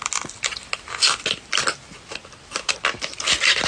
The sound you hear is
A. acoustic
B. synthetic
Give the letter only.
A